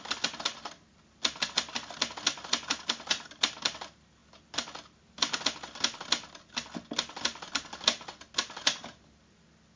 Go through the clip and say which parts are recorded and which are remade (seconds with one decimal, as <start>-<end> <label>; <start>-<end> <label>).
0.0-9.8 recorded